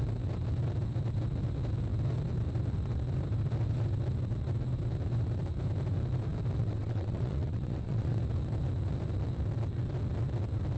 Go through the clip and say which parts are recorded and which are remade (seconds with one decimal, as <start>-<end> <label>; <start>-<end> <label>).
0.0-6.6 recorded; 6.6-8.2 remade; 8.2-10.8 recorded